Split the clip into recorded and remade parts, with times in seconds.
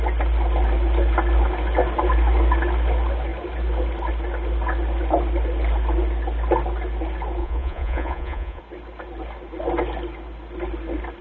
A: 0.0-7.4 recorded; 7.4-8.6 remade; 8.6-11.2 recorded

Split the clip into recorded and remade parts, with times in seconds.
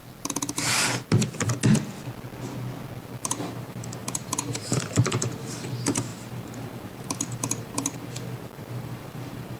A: 0.0-3.0 recorded; 3.0-9.6 remade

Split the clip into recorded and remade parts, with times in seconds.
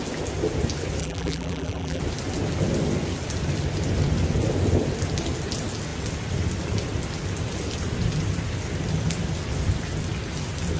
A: 0.0-1.0 recorded; 1.0-2.0 remade; 2.0-10.8 recorded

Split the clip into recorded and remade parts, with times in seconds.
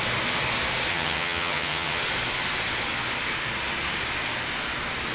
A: 0.0-0.9 recorded; 0.9-2.0 remade; 2.0-5.1 recorded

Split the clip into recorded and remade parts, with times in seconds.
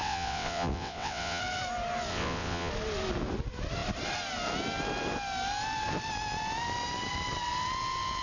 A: 0.0-1.4 remade; 1.4-2.1 recorded; 2.1-2.7 remade; 2.7-8.2 recorded